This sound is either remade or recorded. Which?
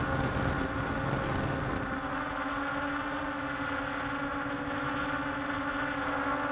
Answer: recorded